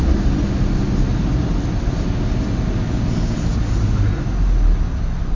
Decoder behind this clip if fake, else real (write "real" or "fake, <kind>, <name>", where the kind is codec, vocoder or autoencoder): real